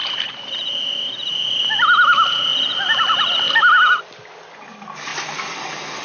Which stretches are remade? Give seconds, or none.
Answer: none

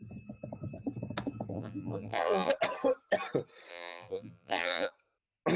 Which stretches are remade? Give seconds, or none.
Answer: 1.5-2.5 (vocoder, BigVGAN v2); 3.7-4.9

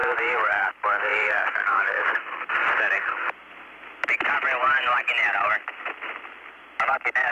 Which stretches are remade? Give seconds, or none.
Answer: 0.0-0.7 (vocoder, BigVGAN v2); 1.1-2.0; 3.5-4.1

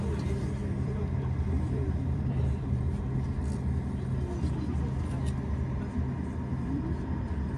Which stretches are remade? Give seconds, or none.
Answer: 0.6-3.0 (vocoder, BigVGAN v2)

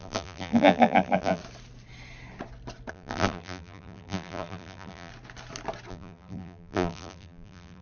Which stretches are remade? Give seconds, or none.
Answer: 0.0-1.4 (vocoder, BigVGAN v2); 2.9-5.1; 5.9-7.8

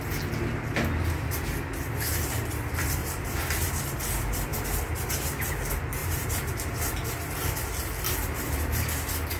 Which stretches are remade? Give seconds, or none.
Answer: 3.0-3.8 (vocoder, BigVGAN v2); 6.0-6.9

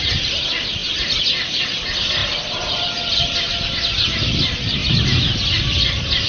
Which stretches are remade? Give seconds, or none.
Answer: none

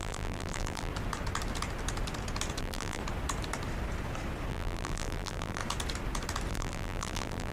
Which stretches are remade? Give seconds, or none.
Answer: 0.0-0.9 (vocoder, BigVGAN v2); 2.6-3.0; 4.5-5.6; 6.5-7.5